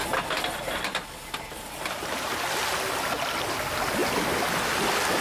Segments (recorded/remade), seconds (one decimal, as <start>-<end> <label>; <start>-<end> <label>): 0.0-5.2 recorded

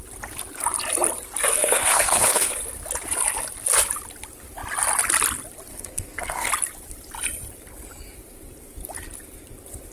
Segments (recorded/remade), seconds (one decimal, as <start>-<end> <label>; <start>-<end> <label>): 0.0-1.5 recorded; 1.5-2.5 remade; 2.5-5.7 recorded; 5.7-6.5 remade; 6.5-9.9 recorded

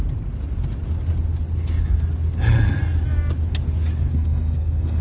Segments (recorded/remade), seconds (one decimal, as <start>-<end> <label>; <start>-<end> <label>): 0.0-4.1 recorded; 4.1-5.0 remade

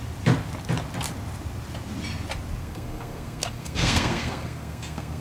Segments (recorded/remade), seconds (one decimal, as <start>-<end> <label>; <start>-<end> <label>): 0.0-2.6 recorded; 2.6-5.2 remade

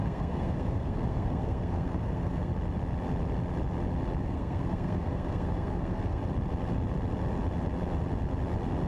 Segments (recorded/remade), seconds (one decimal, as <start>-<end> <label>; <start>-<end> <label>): 0.0-2.5 remade; 2.5-4.2 recorded; 4.2-6.2 remade; 6.2-8.9 recorded

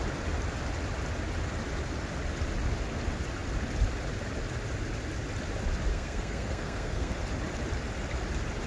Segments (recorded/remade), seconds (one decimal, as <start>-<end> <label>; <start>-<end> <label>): 0.0-5.9 recorded; 5.9-7.1 remade; 7.1-8.7 recorded